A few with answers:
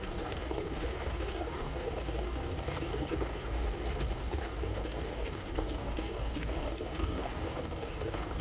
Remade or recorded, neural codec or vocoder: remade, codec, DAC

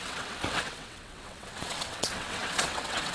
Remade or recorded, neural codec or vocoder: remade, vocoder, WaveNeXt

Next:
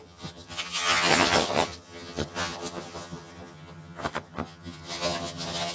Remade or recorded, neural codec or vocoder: remade, vocoder, HiFi-GAN